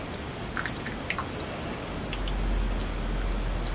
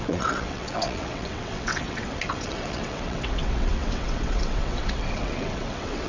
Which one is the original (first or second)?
first